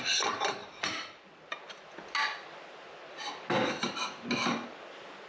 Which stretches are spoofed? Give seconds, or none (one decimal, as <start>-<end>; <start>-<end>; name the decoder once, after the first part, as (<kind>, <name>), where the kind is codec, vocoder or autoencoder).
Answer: none